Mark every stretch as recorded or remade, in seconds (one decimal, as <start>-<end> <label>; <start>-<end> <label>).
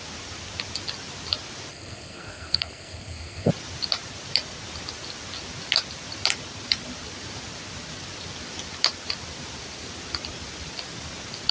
0.0-1.7 recorded; 1.7-3.5 remade; 3.5-11.5 recorded